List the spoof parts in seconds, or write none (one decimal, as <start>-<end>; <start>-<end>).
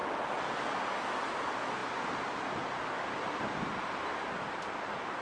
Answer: none